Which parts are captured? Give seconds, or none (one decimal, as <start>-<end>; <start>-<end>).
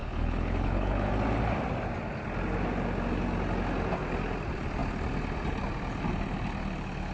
1.1-7.1